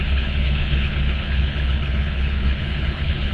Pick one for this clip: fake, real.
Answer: fake